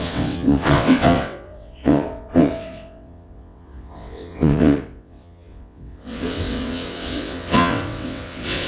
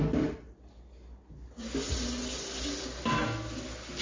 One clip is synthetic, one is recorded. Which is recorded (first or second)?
second